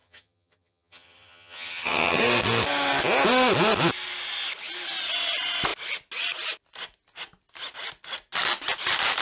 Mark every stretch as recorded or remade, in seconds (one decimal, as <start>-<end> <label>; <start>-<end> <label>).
0.0-2.2 remade; 2.2-9.2 recorded